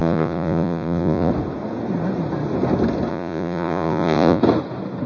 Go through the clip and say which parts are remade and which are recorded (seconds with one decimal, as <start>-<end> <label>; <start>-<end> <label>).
0.0-1.3 remade; 1.3-3.1 recorded; 3.1-4.4 remade; 4.4-5.1 recorded